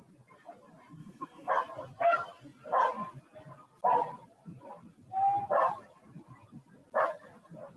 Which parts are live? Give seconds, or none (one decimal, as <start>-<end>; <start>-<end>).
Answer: 0.0-1.0; 1.5-7.8